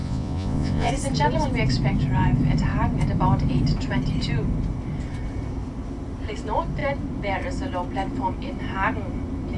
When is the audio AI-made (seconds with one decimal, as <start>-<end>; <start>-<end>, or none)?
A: 0.0-0.9